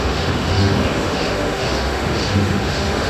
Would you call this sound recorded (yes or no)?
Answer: no